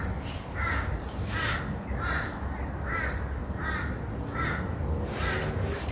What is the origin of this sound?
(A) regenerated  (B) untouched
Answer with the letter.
B